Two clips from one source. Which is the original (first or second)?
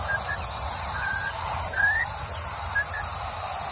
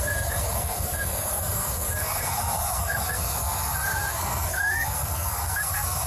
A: first